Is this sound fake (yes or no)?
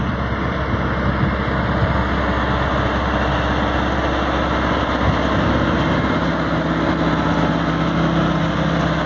no